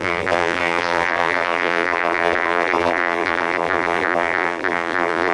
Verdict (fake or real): fake